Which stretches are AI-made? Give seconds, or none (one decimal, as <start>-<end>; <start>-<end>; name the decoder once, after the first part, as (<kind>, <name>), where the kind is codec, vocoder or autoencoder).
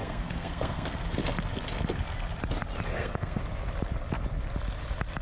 0.0-1.0 (codec, SNAC); 2.9-3.4